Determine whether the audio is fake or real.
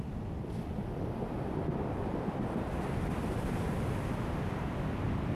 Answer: real